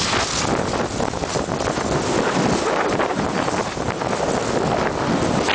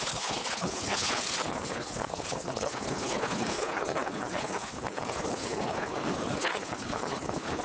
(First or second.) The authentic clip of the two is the first